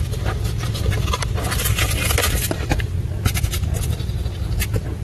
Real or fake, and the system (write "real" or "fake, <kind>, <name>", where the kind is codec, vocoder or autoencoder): real